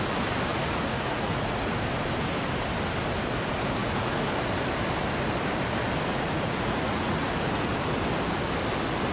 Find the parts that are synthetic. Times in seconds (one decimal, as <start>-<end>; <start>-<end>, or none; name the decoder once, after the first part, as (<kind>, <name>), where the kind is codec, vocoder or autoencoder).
0.5-1.7 (vocoder, Vocos); 3.8-4.3; 6.1-7.7